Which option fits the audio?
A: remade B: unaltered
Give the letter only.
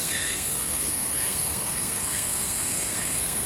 A